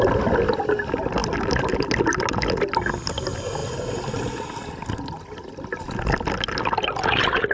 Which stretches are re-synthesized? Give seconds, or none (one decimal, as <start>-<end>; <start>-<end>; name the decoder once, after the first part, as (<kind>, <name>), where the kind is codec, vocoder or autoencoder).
none